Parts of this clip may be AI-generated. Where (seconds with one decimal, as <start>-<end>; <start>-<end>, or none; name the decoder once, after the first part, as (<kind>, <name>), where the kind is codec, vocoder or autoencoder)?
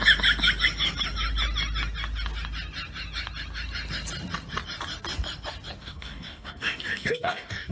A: 5.8-7.7 (codec, DAC)